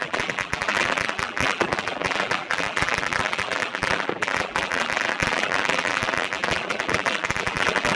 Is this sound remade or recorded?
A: remade